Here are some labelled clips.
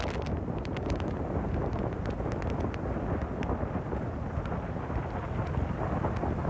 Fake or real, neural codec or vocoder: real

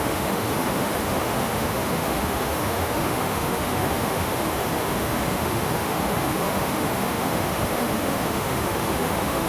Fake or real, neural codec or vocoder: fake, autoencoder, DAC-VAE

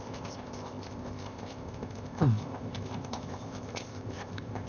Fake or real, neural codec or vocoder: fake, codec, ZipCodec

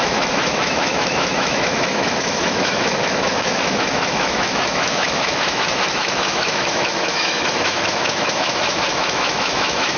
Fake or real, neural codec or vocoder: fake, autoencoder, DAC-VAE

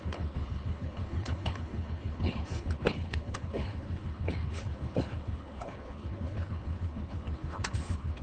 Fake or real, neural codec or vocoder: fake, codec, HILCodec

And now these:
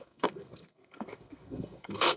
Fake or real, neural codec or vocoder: fake, codec, SNAC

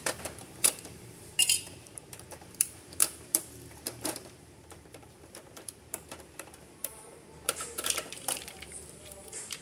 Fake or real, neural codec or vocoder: fake, vocoder, BigVGAN v2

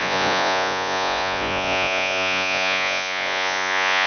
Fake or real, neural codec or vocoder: fake, vocoder, Vocos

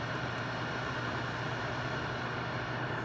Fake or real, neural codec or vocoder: fake, vocoder, BigVGAN v2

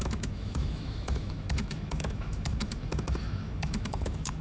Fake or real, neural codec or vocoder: fake, autoencoder, DAC-VAE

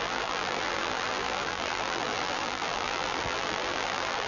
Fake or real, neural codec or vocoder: fake, vocoder, BigVGAN v2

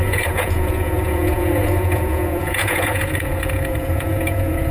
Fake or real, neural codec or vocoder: fake, vocoder, Vocos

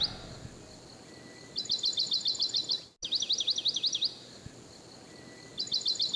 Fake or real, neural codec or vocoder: real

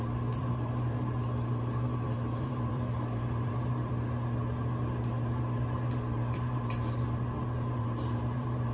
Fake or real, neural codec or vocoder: fake, vocoder, BigVGAN v2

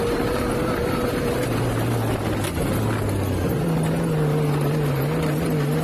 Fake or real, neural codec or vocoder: real